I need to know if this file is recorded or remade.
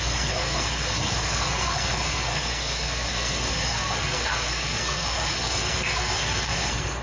remade